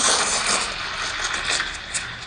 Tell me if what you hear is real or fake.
real